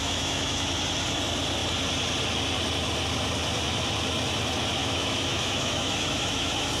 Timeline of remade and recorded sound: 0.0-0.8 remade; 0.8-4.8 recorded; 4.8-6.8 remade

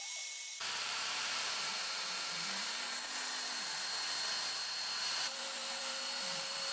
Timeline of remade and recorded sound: 0.0-1.7 remade; 1.7-5.0 recorded; 5.0-6.7 remade

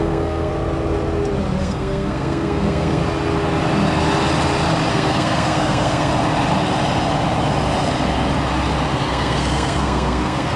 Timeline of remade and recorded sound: 0.0-0.5 remade; 0.5-1.6 recorded; 1.6-3.0 remade; 3.0-4.9 recorded; 4.9-6.1 remade; 6.1-9.1 recorded; 9.1-10.6 remade

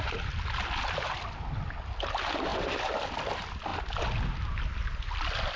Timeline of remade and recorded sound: 0.0-5.6 recorded